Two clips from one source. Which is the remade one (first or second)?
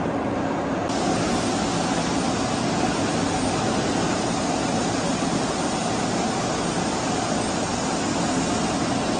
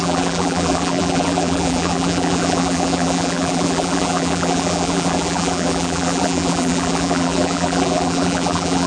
second